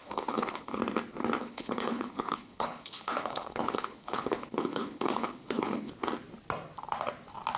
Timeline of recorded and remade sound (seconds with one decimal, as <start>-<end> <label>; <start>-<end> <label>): 0.0-0.8 remade; 0.8-1.4 recorded; 1.4-5.9 remade; 5.9-7.6 recorded